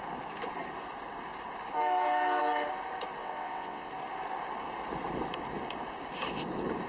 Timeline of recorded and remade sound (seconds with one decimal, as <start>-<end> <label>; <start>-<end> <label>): 0.0-3.2 recorded; 3.2-3.9 remade; 3.9-6.9 recorded